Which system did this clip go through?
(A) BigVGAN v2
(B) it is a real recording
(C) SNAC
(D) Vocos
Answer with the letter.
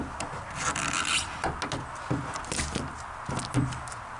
B